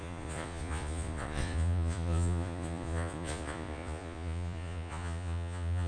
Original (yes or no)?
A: no